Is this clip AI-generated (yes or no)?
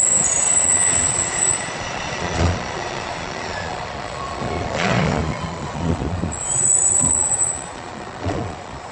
yes